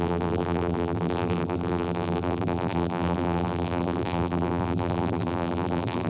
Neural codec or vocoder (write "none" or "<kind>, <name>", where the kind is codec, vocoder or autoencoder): vocoder, BigVGAN v2